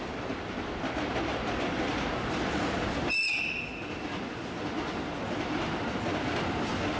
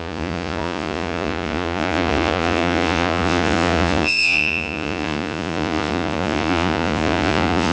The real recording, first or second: first